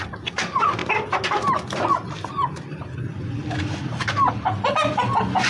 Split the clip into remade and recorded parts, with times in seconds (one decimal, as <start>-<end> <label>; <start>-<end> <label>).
0.0-5.5 recorded